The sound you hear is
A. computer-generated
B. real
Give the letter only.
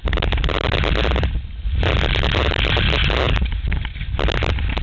B